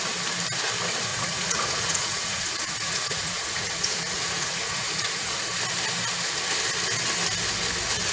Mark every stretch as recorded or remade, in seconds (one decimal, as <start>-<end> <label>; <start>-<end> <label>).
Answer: 0.0-1.1 recorded; 1.1-5.5 remade; 5.5-8.1 recorded